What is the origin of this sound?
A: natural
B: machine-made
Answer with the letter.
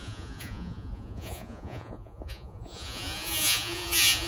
B